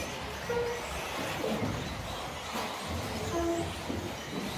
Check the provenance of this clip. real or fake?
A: real